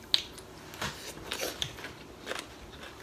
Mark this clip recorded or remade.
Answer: recorded